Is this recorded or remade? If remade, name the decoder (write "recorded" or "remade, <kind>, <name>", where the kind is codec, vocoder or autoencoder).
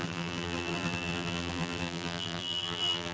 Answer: remade, vocoder, BigVGAN v2